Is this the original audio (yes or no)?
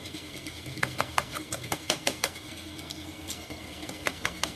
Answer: no